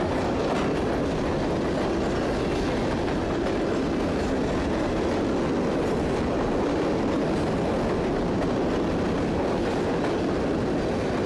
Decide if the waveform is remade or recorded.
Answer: recorded